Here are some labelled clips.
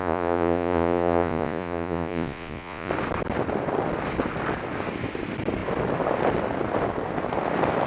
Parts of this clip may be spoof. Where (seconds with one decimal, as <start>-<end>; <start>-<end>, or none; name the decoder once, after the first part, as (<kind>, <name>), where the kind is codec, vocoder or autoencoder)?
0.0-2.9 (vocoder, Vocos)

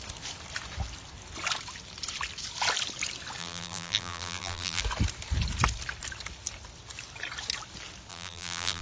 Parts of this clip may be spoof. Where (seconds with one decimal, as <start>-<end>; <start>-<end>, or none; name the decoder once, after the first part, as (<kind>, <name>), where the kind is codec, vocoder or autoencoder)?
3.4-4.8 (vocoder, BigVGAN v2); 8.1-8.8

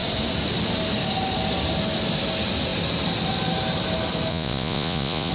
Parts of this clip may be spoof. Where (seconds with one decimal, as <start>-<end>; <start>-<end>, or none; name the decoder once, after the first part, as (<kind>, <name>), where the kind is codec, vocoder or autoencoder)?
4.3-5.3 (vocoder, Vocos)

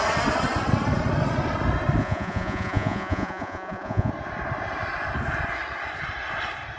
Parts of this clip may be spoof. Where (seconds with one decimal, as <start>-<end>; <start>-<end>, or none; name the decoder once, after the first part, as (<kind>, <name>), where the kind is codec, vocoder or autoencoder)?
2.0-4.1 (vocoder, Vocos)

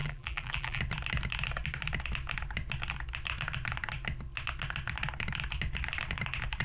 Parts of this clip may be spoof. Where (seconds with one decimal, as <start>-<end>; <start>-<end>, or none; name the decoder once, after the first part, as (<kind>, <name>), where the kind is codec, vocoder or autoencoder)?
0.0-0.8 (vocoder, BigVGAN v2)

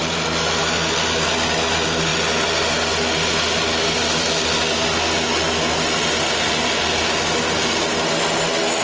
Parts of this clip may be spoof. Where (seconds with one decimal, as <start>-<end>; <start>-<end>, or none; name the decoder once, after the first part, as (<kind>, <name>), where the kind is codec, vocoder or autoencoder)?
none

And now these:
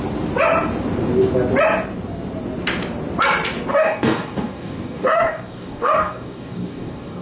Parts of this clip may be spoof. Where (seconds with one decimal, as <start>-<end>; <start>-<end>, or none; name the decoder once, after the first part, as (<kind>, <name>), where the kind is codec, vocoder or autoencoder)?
3.7-7.2 (codec, DAC)

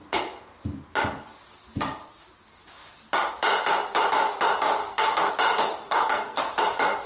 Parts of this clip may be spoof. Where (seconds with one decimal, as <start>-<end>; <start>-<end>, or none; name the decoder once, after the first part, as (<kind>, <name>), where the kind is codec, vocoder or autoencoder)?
4.8-5.3 (codec, SNAC); 5.8-6.4